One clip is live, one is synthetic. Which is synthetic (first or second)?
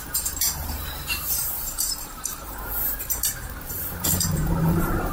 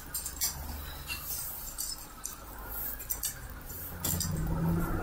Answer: first